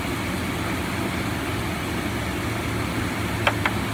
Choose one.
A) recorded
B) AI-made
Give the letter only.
A